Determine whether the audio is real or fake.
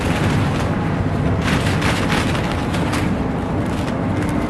real